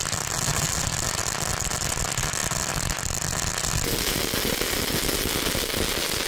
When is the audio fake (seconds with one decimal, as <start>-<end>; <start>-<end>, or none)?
none